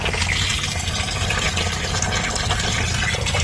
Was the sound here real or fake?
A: real